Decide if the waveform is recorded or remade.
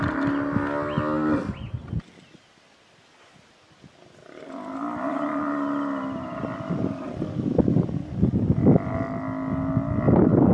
recorded